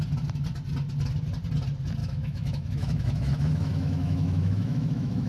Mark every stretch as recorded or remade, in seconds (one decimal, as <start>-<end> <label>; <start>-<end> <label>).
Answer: 0.0-2.0 recorded; 2.0-5.3 remade